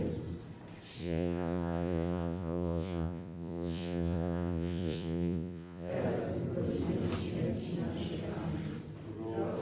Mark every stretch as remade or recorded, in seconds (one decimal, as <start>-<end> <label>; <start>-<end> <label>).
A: 0.0-1.0 recorded; 1.0-5.9 remade; 5.9-9.6 recorded